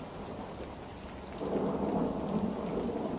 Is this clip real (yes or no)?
yes